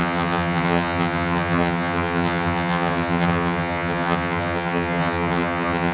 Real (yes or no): no